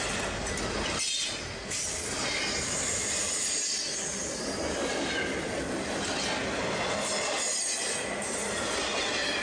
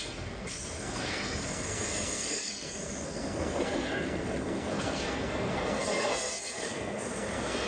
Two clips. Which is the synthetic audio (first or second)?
second